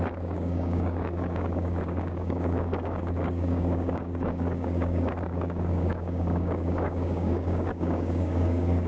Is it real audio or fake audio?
fake